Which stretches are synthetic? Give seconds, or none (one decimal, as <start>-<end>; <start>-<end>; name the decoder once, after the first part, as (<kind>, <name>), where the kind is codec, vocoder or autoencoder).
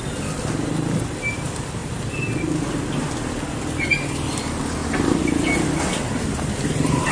none